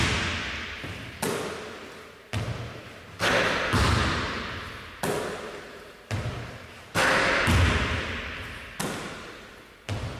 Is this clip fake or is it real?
real